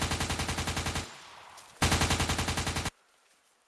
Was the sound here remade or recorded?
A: recorded